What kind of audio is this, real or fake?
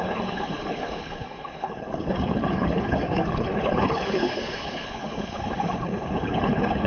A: fake